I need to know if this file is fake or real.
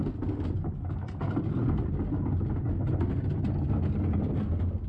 real